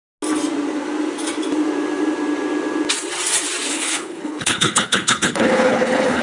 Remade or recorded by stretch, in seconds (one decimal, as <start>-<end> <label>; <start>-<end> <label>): 0.0-3.7 recorded; 3.7-6.2 remade